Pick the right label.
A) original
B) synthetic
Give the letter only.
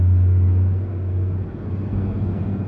B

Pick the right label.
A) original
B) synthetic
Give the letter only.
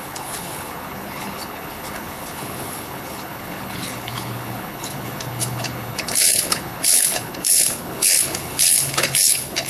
B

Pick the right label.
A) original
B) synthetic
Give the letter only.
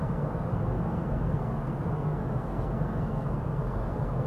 B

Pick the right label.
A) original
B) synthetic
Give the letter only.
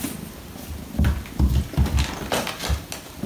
A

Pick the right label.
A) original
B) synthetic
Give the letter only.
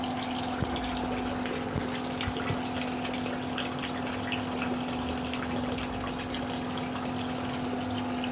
A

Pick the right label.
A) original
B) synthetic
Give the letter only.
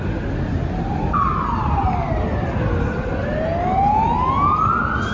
A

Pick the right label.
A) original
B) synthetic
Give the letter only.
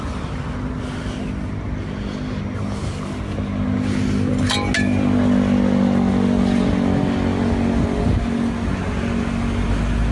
A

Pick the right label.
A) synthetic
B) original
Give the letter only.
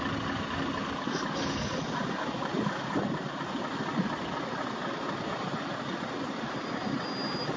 B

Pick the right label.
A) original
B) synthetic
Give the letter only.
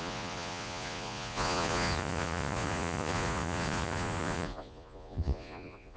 B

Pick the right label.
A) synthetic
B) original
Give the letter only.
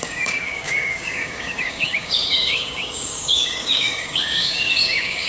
A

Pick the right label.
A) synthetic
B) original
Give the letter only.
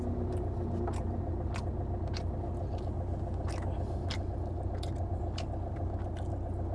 B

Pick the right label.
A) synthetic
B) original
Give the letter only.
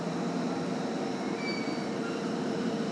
A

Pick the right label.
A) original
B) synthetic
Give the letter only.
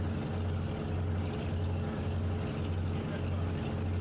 A